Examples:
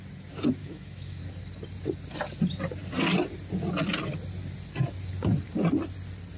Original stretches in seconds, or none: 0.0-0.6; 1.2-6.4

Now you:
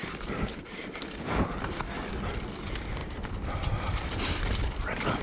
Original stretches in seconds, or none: 2.1-3.0

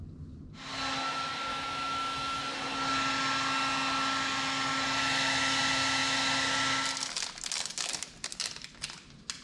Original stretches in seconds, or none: 0.0-1.5; 2.4-9.4

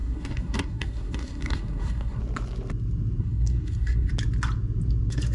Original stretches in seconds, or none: 2.2-3.2; 4.1-5.3

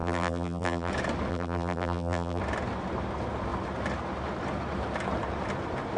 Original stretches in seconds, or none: 0.9-1.3; 2.4-6.0

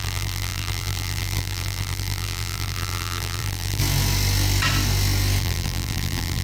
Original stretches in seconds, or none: 3.8-5.4

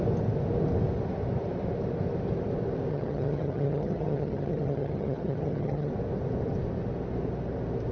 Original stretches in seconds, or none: 0.0-2.9; 5.9-7.9